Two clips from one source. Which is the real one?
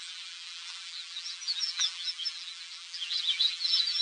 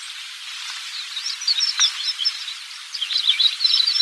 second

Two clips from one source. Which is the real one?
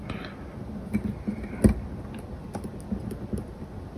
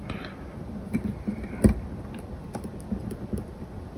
first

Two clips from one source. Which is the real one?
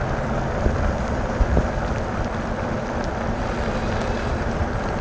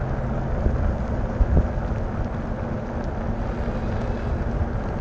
second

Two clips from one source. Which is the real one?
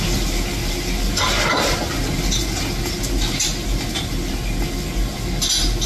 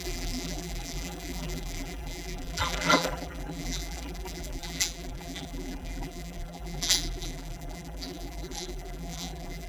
first